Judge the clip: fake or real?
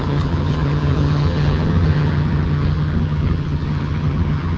fake